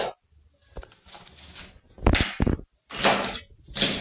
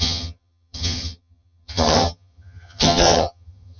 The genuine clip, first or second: first